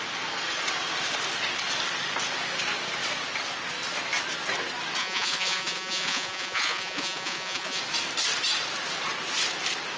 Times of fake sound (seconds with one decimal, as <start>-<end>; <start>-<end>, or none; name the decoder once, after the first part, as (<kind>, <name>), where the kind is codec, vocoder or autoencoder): 5.0-7.8 (vocoder, Vocos)